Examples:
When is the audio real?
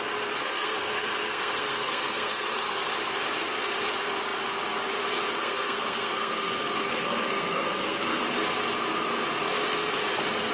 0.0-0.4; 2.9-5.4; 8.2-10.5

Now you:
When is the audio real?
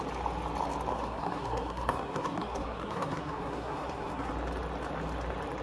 0.0-0.9; 4.3-5.6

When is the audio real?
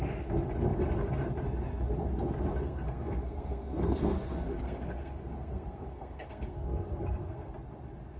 0.0-2.6; 7.5-8.2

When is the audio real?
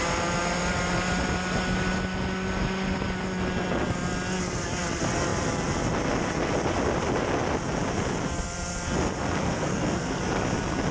0.0-9.4; 10.2-10.9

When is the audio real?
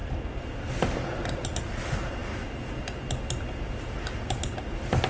0.0-5.1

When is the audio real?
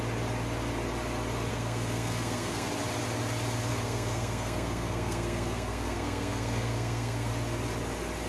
0.0-1.5; 2.7-3.7; 7.3-8.3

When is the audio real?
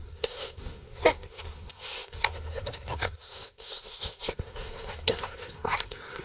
none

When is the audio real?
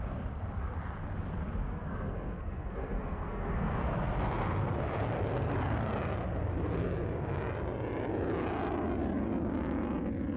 0.0-1.6; 3.8-10.4